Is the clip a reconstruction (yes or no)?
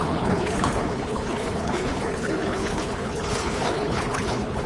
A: yes